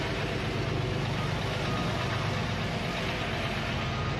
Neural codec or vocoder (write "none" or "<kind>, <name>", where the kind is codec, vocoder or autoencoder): none